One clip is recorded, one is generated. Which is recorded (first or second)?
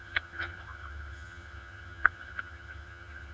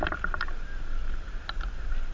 second